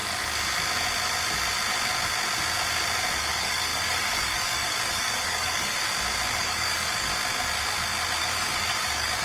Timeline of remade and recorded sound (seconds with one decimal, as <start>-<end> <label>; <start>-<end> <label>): 0.0-3.2 recorded; 3.2-5.8 remade; 5.8-6.4 recorded; 6.4-7.1 remade; 7.1-8.2 recorded; 8.2-9.2 remade